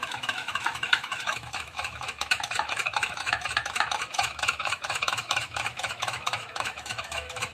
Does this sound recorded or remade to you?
remade